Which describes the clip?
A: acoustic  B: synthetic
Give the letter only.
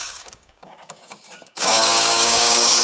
B